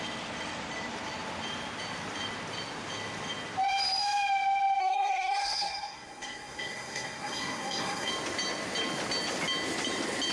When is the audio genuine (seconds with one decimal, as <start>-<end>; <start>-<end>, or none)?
0.0-4.8; 8.1-10.3